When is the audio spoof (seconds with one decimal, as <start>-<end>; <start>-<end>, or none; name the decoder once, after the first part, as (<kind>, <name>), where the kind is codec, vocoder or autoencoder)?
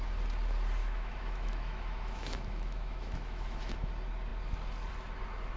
0.8-3.9 (autoencoder, DAC-VAE)